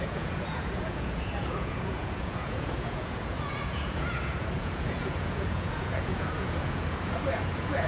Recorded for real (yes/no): no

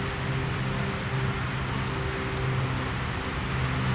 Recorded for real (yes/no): yes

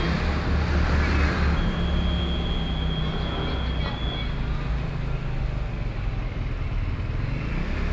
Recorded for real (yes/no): yes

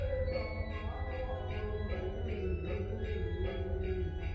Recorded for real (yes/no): yes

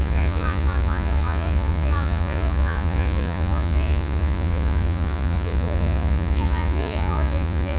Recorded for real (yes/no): no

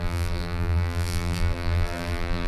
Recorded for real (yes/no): no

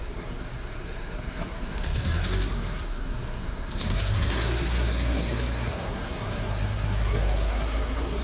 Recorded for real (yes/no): no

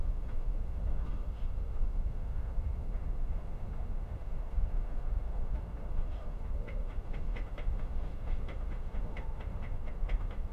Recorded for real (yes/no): no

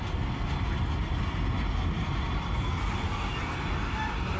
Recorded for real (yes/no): yes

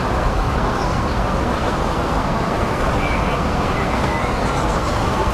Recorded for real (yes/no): no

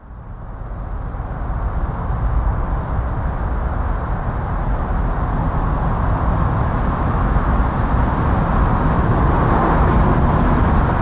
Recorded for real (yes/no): yes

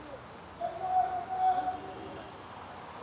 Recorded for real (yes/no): yes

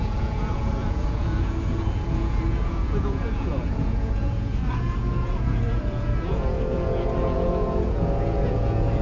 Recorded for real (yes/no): no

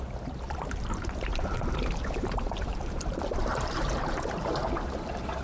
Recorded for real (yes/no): no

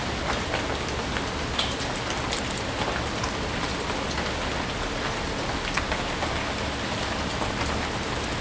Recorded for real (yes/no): yes